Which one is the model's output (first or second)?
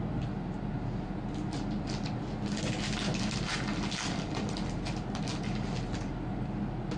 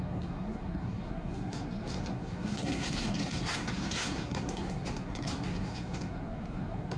second